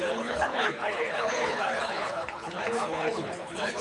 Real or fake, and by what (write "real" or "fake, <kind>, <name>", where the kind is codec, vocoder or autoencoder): fake, codec, HILCodec